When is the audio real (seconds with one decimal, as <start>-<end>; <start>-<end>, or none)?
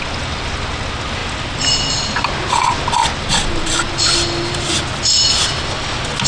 0.0-6.3